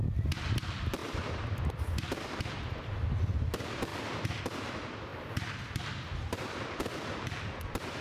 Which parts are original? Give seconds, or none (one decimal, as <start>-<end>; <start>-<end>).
0.0-8.0